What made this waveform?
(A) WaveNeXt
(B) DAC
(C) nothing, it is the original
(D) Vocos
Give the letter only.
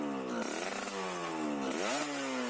C